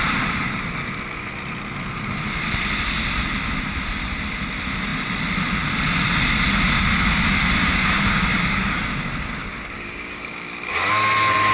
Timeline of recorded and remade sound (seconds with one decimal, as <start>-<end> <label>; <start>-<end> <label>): 0.0-6.9 recorded; 6.9-10.9 remade; 10.9-11.5 recorded